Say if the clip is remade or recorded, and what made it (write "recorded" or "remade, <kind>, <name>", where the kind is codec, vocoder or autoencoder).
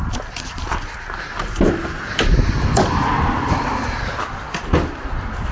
recorded